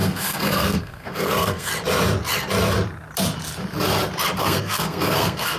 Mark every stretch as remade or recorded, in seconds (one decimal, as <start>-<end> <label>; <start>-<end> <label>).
0.0-1.7 remade; 1.7-4.4 recorded; 4.4-5.6 remade